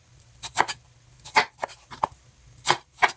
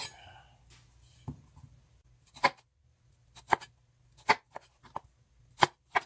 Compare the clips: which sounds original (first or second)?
second